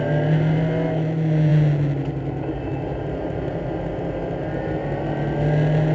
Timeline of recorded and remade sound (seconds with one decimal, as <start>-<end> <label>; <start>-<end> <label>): 0.0-5.9 recorded